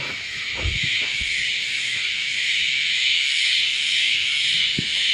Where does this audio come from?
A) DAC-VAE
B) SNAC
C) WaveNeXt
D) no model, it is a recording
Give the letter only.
A